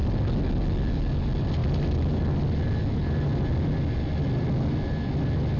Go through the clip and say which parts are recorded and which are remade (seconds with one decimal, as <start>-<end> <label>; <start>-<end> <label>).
0.0-5.6 recorded